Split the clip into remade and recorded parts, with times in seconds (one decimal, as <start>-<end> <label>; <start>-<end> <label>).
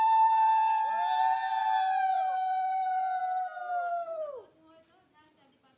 0.0-5.8 recorded